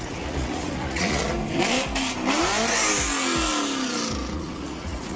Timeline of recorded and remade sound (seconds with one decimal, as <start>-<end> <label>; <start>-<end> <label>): 0.0-1.2 remade; 1.2-4.3 recorded; 4.3-5.2 remade